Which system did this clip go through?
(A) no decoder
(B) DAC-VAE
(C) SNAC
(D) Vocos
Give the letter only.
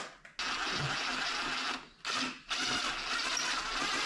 A